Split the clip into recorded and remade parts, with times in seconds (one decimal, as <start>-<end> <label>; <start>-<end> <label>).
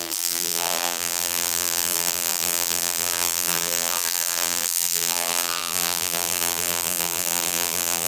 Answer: 0.0-8.1 remade